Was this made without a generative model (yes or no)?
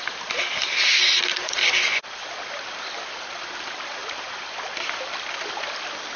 yes